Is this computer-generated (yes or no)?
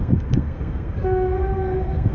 yes